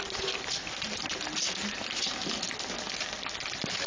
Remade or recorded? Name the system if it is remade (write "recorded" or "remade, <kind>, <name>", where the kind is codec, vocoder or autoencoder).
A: recorded